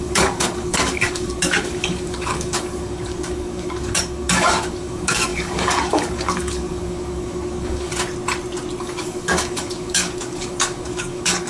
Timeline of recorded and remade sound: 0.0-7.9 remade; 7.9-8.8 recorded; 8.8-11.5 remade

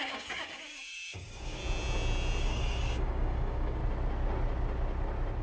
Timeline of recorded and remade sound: 0.0-1.6 remade; 1.6-2.4 recorded; 2.4-3.8 remade; 3.8-5.4 recorded

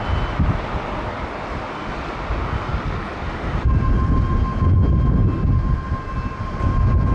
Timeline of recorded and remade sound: 0.0-2.7 recorded; 2.7-3.5 remade; 3.5-7.1 recorded

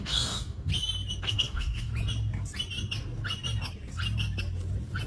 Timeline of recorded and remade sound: 0.0-0.7 remade; 0.7-1.2 recorded; 1.2-1.9 remade; 1.9-5.1 recorded

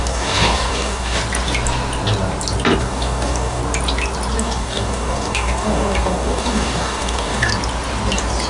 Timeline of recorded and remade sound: 0.0-1.2 remade; 1.2-2.8 recorded; 2.8-3.6 remade; 3.6-4.4 recorded; 4.4-7.5 remade; 7.5-8.5 recorded

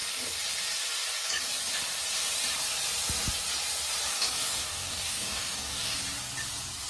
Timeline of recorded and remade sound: 0.0-4.1 recorded; 4.1-6.0 remade; 6.0-6.9 recorded